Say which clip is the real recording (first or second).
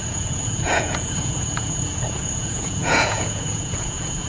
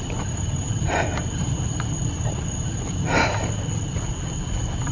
second